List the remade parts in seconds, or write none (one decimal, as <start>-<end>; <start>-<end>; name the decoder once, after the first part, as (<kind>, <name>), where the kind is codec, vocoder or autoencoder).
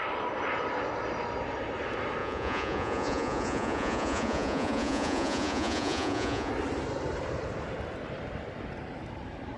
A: 2.2-6.5 (vocoder, Vocos)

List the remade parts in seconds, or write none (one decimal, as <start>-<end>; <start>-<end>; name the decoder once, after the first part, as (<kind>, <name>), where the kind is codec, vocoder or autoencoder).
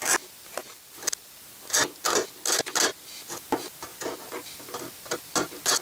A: none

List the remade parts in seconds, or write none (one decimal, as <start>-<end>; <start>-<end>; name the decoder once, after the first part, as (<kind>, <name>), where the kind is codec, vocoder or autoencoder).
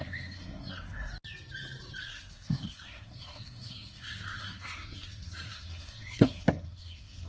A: 0.0-1.1 (codec, SNAC); 2.0-7.3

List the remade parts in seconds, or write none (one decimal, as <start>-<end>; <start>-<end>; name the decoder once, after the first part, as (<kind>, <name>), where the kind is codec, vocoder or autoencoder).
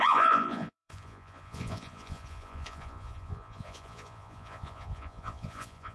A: 0.0-5.9 (vocoder, Vocos)